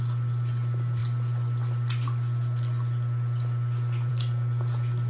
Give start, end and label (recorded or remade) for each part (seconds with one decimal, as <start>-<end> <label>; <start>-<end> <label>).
0.0-5.1 recorded